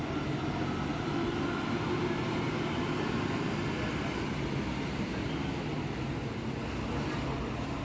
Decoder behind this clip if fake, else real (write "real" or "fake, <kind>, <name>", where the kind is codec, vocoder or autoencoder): real